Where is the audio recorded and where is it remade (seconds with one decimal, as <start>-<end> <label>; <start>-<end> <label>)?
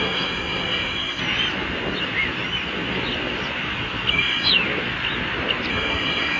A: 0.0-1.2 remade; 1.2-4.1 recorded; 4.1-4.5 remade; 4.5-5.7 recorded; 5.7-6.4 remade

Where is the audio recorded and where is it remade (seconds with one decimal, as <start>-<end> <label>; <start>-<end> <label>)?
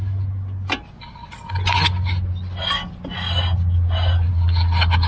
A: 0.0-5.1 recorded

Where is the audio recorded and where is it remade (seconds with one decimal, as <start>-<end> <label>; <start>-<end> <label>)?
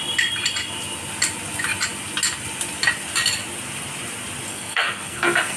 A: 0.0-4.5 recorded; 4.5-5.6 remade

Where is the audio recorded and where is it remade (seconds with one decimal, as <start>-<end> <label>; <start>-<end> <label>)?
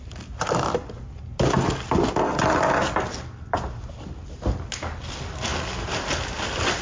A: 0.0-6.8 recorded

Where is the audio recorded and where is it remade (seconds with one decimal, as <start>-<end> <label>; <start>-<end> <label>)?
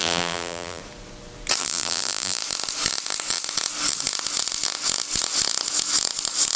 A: 0.0-0.8 remade; 0.8-1.6 recorded; 1.6-2.4 remade; 2.4-6.6 recorded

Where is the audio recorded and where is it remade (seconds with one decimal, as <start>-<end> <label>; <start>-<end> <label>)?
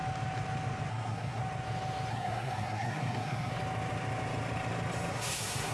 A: 0.0-0.9 recorded; 0.9-1.4 remade; 1.4-2.1 recorded; 2.1-3.5 remade; 3.5-5.1 recorded; 5.1-5.7 remade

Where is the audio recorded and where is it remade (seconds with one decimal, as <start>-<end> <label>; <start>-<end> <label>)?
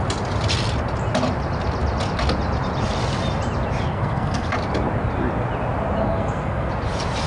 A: 0.0-3.9 recorded; 3.9-4.5 remade; 4.5-6.0 recorded; 6.0-6.7 remade; 6.7-7.3 recorded